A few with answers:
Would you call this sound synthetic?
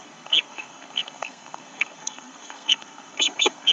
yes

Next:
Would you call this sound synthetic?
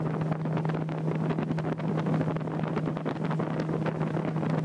no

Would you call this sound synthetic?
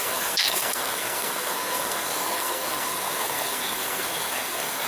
yes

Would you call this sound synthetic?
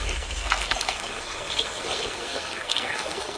yes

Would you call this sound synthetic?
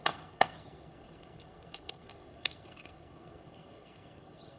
yes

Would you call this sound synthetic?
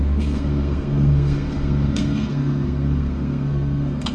yes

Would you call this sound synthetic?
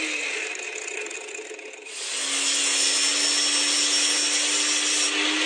no